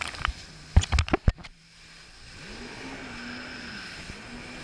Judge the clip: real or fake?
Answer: real